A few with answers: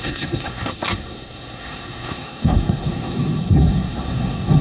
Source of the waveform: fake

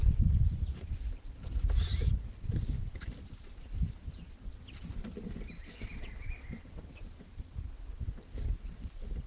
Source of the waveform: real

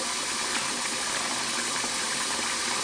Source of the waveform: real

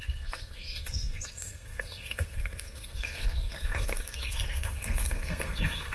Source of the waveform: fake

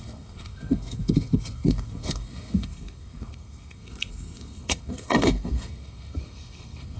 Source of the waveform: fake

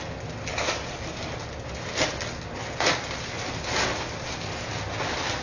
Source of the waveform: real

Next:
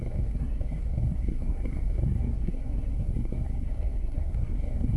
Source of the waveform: fake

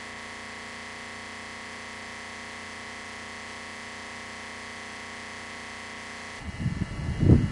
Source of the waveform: real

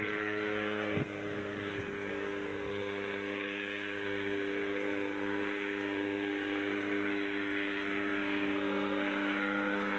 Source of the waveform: fake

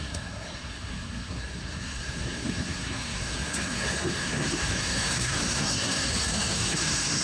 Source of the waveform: fake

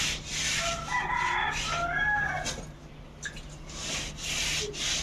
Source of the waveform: real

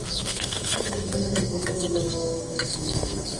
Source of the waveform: fake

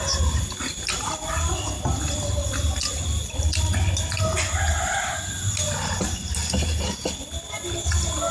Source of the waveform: real